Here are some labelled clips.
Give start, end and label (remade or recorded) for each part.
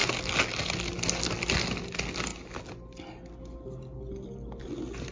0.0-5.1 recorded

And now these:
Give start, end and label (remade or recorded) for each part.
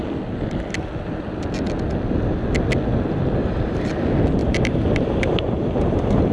0.0-3.4 recorded; 3.4-3.9 remade; 3.9-4.4 recorded; 4.4-6.3 remade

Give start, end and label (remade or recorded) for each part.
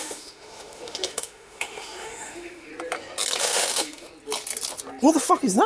0.0-2.7 remade; 2.7-3.4 recorded; 3.4-4.1 remade; 4.1-5.7 recorded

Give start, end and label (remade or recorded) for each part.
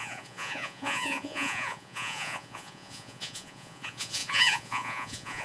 0.0-5.4 remade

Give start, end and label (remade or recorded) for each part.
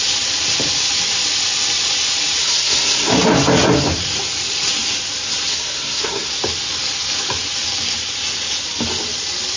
0.0-2.4 recorded; 2.4-3.1 remade; 3.1-5.5 recorded; 5.5-6.3 remade; 6.3-9.6 recorded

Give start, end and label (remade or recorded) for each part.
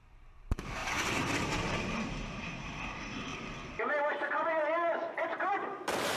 0.0-3.3 remade; 3.3-5.5 recorded; 5.5-6.2 remade